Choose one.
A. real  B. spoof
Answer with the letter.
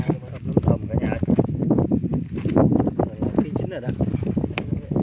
A